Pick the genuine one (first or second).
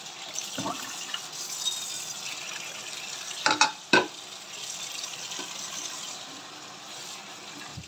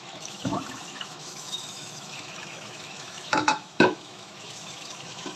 first